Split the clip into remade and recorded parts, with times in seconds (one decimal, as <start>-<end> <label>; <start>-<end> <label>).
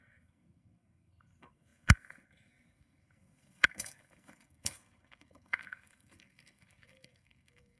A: 0.0-7.8 remade